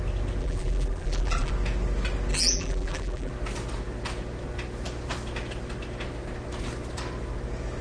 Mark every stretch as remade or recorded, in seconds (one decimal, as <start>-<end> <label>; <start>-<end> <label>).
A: 0.0-0.4 recorded; 0.4-1.5 remade; 1.5-2.3 recorded; 2.3-3.3 remade; 3.3-7.8 recorded